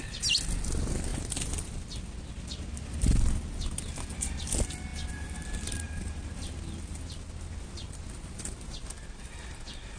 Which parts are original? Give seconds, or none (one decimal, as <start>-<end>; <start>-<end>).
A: 0.0-10.0